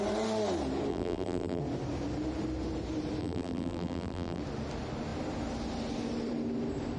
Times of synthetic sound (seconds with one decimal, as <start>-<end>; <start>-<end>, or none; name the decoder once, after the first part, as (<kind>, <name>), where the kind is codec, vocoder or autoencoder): 0.9-1.6 (vocoder, BigVGAN v2); 3.2-4.4